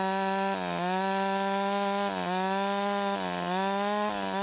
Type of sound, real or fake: real